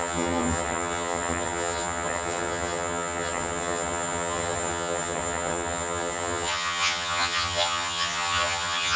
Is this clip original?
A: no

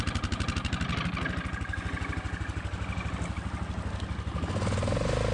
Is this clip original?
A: yes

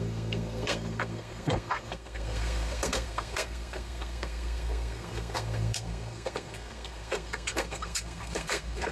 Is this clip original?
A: no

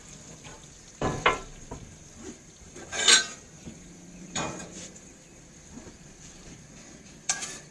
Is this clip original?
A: no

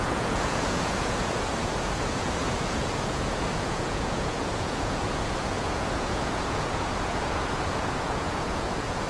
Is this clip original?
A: no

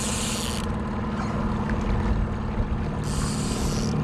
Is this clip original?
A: yes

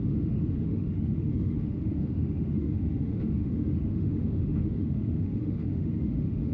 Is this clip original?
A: no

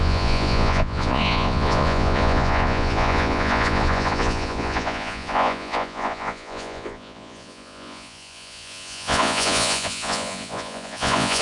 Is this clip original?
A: no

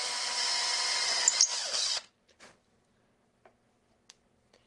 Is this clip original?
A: yes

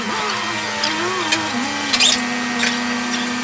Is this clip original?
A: yes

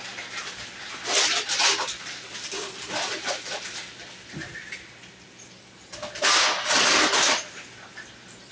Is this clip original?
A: yes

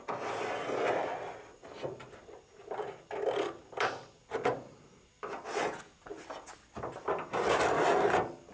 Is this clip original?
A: yes